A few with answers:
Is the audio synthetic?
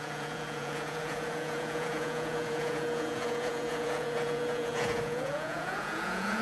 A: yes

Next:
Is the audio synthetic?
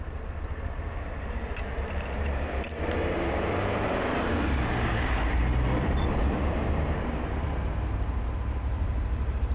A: yes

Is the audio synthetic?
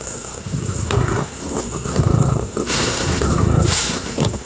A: yes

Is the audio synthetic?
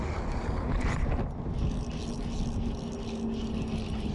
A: no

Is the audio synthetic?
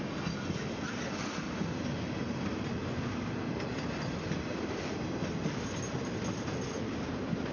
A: no